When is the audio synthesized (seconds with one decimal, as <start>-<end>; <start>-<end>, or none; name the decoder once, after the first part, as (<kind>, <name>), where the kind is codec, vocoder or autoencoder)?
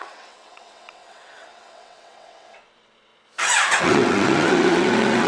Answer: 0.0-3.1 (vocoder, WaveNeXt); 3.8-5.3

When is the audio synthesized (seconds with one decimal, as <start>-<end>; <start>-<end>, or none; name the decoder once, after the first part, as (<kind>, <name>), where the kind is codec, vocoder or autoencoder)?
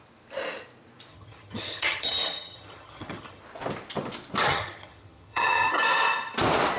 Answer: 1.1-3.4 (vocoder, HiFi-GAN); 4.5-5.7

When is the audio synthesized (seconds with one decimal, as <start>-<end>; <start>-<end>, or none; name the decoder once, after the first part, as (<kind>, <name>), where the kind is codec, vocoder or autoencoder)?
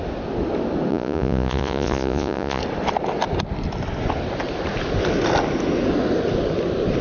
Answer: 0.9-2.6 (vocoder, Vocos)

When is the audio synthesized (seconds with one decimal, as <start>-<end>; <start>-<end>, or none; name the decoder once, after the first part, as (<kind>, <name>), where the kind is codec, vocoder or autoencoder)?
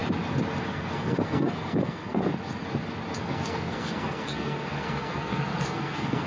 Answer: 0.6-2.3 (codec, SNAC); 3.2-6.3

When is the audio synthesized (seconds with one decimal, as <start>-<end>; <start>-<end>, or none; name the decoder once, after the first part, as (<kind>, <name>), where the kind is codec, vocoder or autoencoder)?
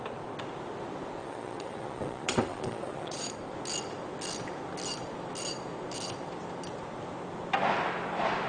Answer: 1.2-3.3 (vocoder, Vocos)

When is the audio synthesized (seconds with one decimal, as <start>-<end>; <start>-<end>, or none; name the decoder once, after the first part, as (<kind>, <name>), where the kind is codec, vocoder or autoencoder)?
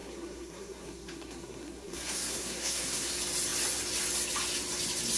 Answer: 0.0-3.1 (codec, SNAC)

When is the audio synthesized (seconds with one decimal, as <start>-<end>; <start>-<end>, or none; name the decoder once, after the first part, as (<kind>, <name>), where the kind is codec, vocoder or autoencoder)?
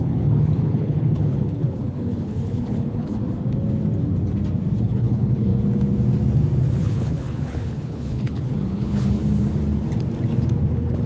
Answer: 0.0-3.2 (codec, HILCodec); 4.8-5.5; 6.8-9.2; 10.7-11.1